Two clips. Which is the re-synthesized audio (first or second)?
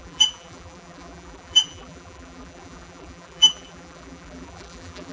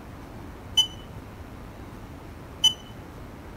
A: first